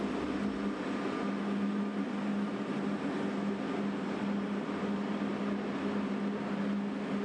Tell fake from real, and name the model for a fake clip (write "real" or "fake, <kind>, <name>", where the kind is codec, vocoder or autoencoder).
real